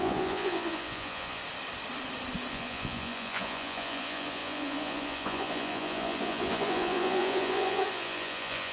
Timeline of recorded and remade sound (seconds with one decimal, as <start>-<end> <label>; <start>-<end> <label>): 0.0-1.4 remade; 1.4-2.5 recorded; 2.5-8.7 remade